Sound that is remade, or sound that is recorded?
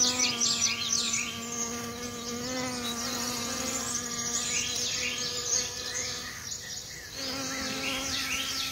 recorded